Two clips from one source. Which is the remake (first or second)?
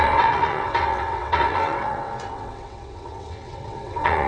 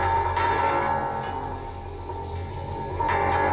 first